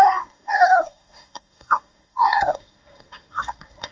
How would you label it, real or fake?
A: fake